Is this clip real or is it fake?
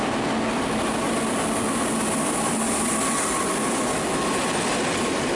real